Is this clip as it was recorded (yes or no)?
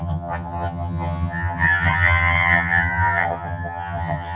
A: no